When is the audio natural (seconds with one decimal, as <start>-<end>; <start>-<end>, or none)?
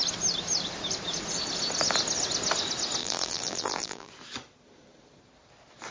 0.0-3.0; 4.1-5.9